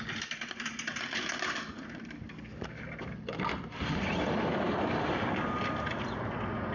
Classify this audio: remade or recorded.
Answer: recorded